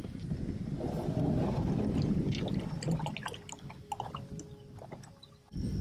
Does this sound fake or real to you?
real